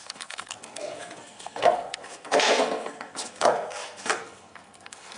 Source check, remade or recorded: remade